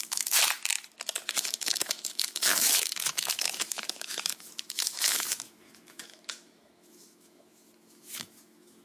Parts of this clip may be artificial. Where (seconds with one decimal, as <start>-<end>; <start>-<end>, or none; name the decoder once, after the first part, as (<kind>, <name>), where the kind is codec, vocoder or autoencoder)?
0.0-0.4 (autoencoder, DAC-VAE); 1.3-8.8